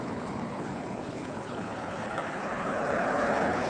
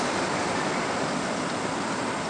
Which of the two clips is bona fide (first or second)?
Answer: second